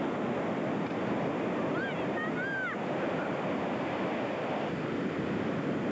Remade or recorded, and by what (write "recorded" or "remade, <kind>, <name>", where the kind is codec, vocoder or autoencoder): recorded